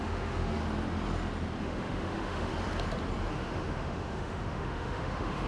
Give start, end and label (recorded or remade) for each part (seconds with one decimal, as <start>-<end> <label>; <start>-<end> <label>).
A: 0.0-0.6 remade; 0.6-1.6 recorded; 1.6-2.5 remade; 2.5-3.3 recorded; 3.3-5.5 remade